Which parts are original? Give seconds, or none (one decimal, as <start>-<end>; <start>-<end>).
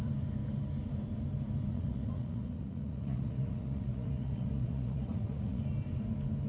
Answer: 0.0-1.7; 5.6-6.5